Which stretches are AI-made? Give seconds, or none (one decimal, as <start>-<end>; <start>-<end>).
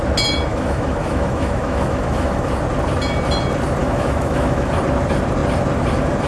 0.5-2.5; 3.8-4.7